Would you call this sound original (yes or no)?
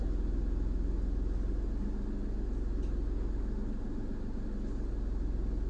yes